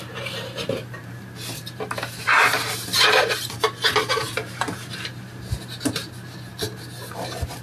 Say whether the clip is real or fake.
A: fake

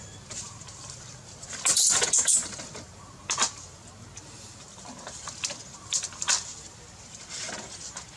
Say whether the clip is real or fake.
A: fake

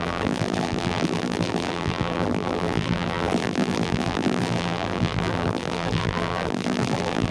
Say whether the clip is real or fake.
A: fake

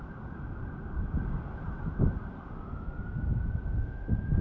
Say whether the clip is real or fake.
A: real